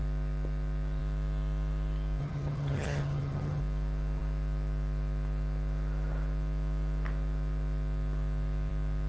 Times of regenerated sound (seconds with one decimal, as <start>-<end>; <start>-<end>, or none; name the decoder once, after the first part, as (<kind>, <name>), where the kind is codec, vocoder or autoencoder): 2.2-3.6 (vocoder, HiFi-GAN)